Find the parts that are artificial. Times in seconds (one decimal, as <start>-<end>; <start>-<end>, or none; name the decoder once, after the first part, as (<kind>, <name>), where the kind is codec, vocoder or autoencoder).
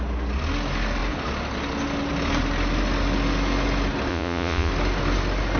4.1-4.7 (vocoder, Vocos)